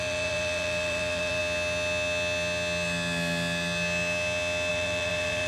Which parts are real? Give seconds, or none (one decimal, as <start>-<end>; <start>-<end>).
1.4-4.7